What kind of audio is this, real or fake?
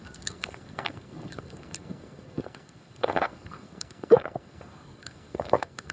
fake